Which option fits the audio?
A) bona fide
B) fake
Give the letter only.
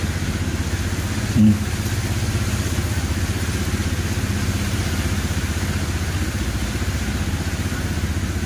A